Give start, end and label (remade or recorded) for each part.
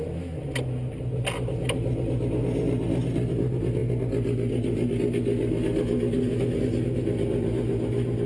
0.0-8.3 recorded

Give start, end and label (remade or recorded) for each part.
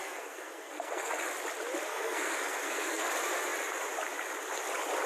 0.0-1.1 remade; 1.1-1.9 recorded; 1.9-3.1 remade; 3.1-5.1 recorded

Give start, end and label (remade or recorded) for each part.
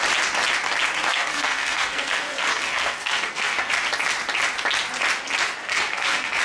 0.0-1.1 recorded; 1.1-3.7 remade; 3.7-5.6 recorded; 5.6-6.4 remade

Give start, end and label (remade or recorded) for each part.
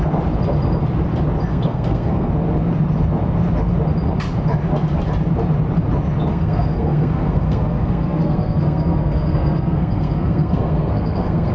0.0-1.5 recorded; 1.5-2.3 remade; 2.3-6.3 recorded; 6.3-11.5 remade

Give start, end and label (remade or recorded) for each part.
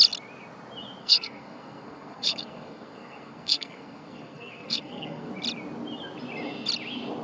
0.0-1.0 recorded; 1.0-5.3 remade; 5.3-7.2 recorded